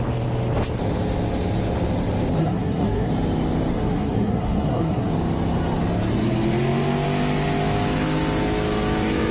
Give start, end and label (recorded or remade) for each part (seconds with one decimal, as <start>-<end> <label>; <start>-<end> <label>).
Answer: 0.0-2.4 recorded; 2.4-3.1 remade; 3.1-3.7 recorded; 3.7-5.1 remade; 5.1-9.3 recorded